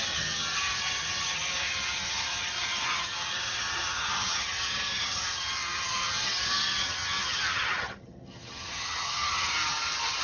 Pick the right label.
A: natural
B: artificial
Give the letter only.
B